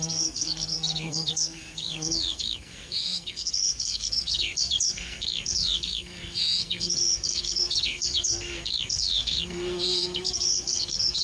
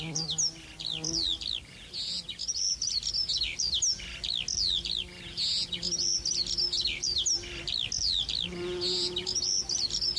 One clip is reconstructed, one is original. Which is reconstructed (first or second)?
first